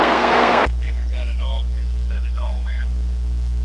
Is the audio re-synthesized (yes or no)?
yes